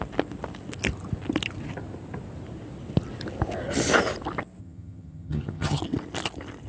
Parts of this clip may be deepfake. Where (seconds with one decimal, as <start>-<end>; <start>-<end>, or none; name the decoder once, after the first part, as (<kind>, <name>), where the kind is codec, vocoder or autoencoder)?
4.6-5.8 (vocoder, HiFi-GAN)